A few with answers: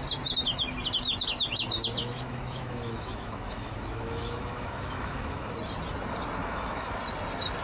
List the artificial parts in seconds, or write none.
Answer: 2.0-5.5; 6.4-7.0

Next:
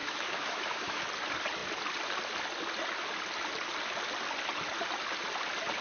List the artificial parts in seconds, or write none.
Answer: 0.0-1.0

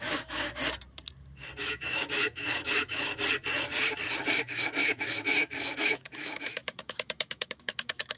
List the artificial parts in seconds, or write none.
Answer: 0.0-0.6; 1.6-3.1; 4.4-8.2